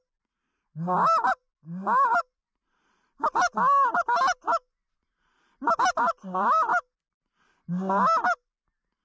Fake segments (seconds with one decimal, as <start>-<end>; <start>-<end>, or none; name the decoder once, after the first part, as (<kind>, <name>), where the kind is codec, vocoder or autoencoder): none